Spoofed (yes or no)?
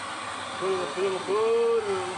no